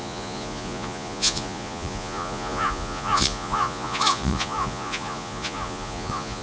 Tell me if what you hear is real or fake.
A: fake